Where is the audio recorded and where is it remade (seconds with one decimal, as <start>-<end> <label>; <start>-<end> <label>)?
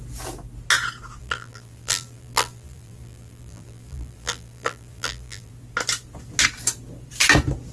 0.0-1.2 recorded; 1.2-5.5 remade; 5.5-7.7 recorded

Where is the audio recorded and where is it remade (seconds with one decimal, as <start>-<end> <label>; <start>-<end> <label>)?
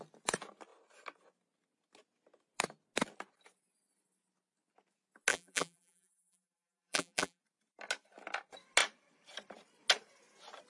0.0-5.3 recorded; 5.3-7.4 remade; 7.4-10.7 recorded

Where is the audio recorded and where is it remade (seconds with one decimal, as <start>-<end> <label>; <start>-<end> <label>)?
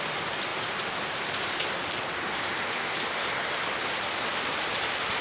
0.0-0.5 recorded; 0.5-3.6 remade; 3.6-5.2 recorded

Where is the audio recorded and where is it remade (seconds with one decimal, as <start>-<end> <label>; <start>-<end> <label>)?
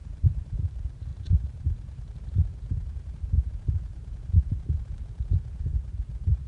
0.0-0.6 remade; 0.6-1.1 recorded; 1.1-5.0 remade; 5.0-5.7 recorded; 5.7-6.5 remade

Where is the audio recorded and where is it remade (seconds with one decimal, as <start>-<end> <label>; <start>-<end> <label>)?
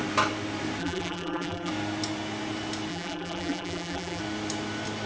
0.0-0.8 recorded; 0.8-1.7 remade; 1.7-2.9 recorded; 2.9-4.2 remade; 4.2-5.1 recorded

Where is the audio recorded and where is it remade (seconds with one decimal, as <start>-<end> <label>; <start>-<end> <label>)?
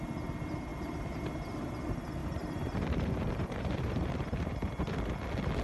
0.0-0.7 recorded; 0.7-1.2 remade; 1.2-2.2 recorded; 2.2-4.8 remade; 4.8-5.6 recorded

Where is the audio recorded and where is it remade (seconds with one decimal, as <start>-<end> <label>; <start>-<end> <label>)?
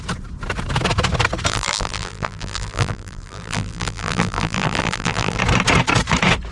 0.0-1.5 recorded; 1.5-5.4 remade; 5.4-6.5 recorded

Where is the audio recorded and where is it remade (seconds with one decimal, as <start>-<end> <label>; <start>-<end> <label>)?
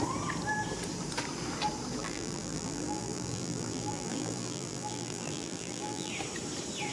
0.0-2.0 recorded; 2.0-6.1 remade; 6.1-6.9 recorded